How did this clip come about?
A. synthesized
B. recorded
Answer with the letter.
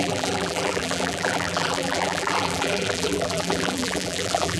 A